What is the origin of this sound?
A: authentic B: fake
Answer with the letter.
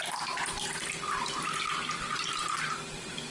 A